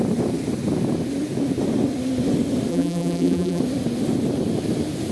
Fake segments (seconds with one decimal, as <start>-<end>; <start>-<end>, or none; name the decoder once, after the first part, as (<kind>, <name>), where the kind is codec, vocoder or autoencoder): 2.7-3.6 (vocoder, BigVGAN v2)